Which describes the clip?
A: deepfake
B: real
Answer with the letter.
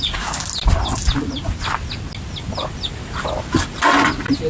B